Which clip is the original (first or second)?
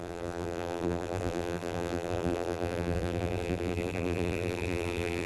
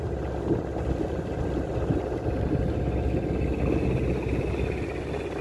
second